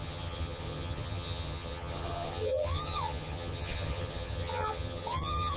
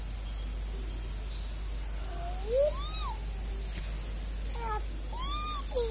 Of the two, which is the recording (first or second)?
second